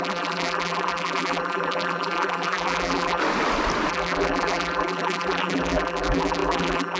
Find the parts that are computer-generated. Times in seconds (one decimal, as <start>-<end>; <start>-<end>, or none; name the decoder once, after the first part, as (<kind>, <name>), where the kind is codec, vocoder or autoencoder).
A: 0.0-3.2 (vocoder, BigVGAN v2); 3.9-7.0